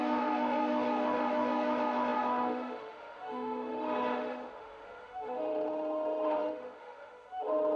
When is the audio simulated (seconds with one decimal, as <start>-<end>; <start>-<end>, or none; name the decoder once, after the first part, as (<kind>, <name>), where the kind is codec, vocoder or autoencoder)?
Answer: 0.0-7.8 (autoencoder, DAC-VAE)